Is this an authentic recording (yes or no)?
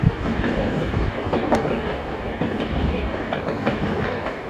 no